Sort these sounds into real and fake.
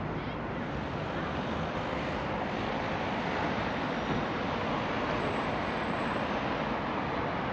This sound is real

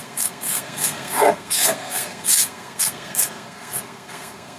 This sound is fake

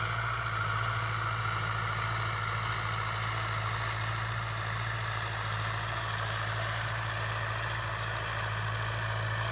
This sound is real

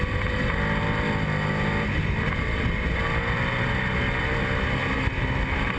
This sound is real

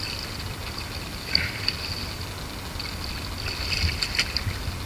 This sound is real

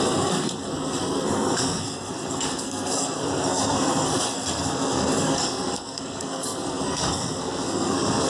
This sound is fake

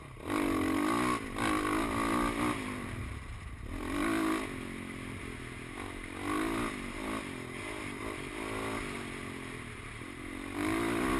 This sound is real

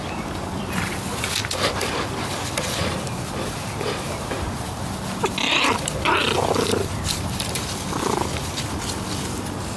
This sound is fake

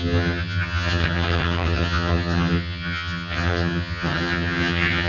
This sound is fake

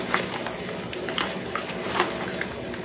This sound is real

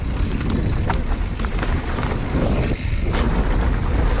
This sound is real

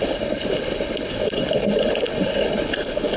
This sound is fake